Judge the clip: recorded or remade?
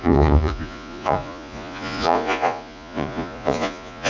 remade